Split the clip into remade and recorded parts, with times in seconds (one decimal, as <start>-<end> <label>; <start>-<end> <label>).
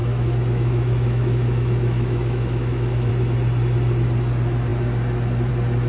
0.0-3.1 remade; 3.1-5.9 recorded